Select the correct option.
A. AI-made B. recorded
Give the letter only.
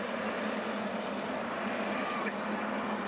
B